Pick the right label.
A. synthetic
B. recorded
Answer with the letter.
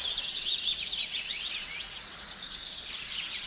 A